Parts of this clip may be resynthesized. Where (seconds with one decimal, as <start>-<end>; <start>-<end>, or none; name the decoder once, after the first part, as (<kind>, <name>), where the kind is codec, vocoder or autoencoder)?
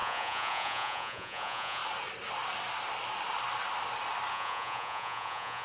0.0-1.8 (vocoder, Vocos); 4.3-5.6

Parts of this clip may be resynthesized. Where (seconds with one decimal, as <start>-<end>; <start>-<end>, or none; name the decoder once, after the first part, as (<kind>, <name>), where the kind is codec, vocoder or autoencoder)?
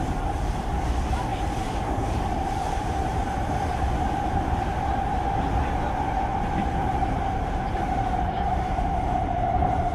0.0-3.2 (vocoder, BigVGAN v2); 6.9-9.9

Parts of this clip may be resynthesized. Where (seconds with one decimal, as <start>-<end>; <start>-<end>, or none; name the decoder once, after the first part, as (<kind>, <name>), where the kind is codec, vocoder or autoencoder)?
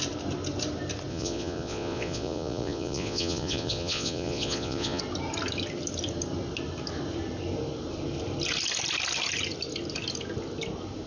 1.1-5.0 (vocoder, Vocos)